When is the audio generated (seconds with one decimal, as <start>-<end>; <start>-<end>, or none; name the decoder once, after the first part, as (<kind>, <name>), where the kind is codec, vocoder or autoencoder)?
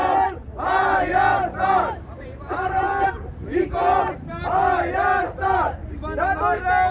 0.0-5.8 (vocoder, BigVGAN v2)